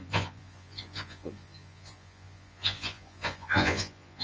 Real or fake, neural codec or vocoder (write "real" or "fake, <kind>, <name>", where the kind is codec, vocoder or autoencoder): fake, vocoder, Vocos